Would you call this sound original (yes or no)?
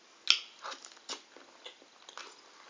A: yes